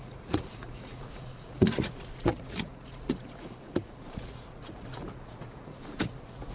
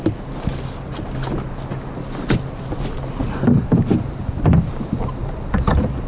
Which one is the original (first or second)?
second